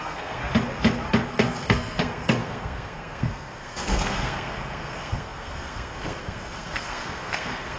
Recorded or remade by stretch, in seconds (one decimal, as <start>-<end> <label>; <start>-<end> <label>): 0.0-0.4 remade; 0.4-1.3 recorded; 1.3-7.8 remade

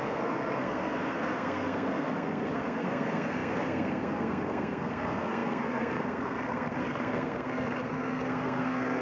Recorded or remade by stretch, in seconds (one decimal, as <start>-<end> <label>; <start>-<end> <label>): 0.0-9.0 remade

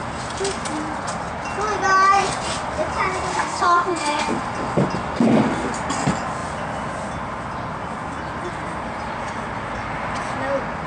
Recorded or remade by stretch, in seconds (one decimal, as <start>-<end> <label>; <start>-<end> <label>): 0.0-3.3 recorded; 3.3-4.2 remade; 4.2-10.9 recorded

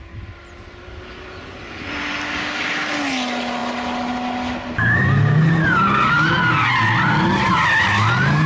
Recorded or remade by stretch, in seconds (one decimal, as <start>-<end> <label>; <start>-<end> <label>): 0.0-8.5 recorded

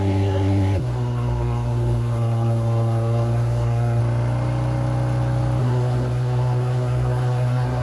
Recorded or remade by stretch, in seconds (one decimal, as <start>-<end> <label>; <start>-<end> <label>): 0.0-4.0 remade; 4.0-5.6 recorded; 5.6-7.8 remade

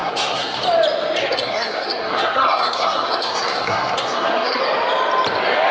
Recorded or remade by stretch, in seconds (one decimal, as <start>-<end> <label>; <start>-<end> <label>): 0.0-0.6 remade; 0.6-1.2 recorded; 1.2-4.6 remade; 4.6-5.7 recorded

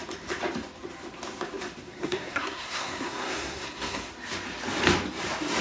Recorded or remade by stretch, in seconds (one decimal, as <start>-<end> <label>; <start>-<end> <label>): 0.0-1.9 recorded; 1.9-4.1 remade; 4.1-5.6 recorded

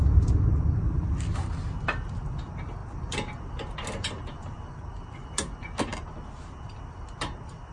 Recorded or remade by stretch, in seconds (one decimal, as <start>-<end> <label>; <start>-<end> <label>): 0.0-7.7 recorded